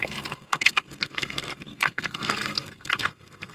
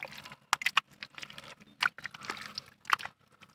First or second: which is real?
second